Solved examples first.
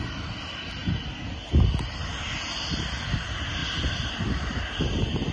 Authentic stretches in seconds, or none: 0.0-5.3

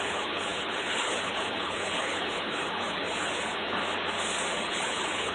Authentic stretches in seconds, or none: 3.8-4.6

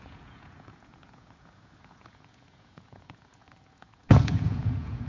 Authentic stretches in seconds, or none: none

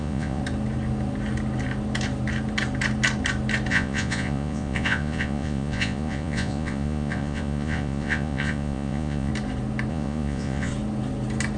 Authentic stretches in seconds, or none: 0.4-3.7; 9.3-9.9; 10.7-11.6